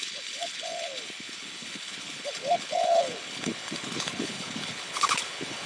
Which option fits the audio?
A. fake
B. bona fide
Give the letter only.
A